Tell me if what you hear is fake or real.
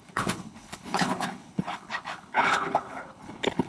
fake